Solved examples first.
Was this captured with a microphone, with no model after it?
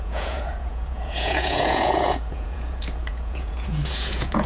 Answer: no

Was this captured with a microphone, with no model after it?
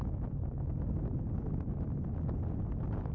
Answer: yes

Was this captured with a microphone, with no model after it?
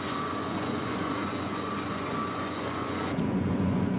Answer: no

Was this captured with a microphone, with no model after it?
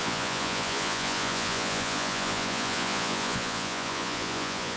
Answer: no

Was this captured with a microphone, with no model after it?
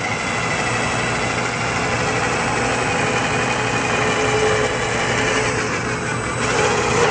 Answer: yes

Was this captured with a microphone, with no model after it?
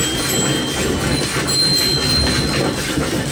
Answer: yes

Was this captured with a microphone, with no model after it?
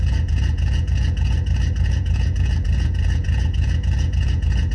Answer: no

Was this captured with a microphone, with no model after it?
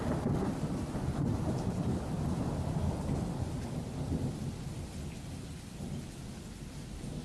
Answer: yes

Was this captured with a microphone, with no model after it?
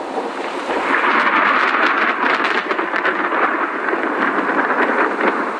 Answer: yes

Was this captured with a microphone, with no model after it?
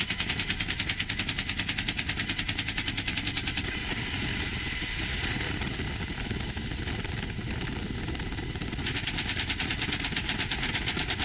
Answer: yes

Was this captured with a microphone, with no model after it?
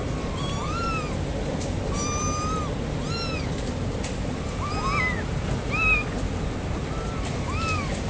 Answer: yes